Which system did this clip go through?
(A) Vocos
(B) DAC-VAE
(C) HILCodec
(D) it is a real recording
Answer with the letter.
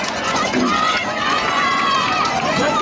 A